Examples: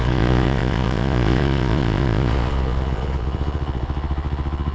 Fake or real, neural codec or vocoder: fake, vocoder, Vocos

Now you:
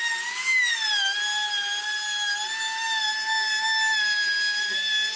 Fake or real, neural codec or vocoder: real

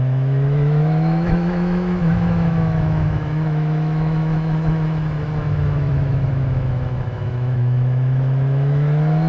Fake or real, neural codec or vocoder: fake, autoencoder, DAC-VAE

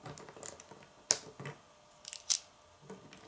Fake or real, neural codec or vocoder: real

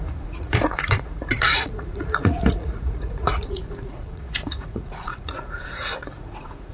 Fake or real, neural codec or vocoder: fake, vocoder, Vocos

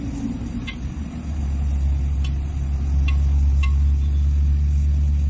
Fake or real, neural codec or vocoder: real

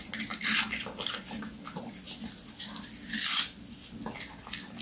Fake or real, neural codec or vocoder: real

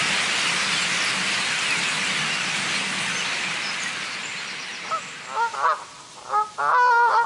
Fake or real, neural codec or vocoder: real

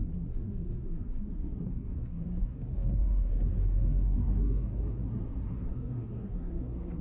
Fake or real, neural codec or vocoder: fake, codec, SNAC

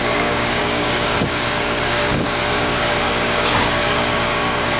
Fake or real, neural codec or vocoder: fake, codec, DAC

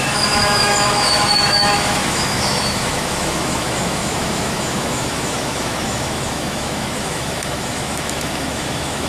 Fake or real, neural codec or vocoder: fake, autoencoder, DAC-VAE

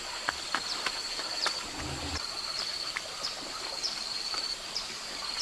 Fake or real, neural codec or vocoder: fake, vocoder, BigVGAN v2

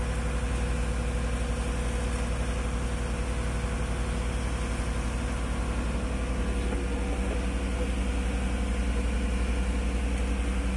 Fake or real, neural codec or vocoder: real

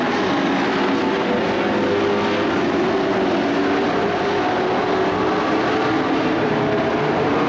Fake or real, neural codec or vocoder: real